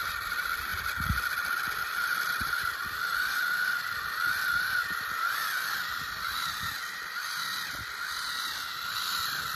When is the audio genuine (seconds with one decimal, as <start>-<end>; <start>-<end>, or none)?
0.7-1.8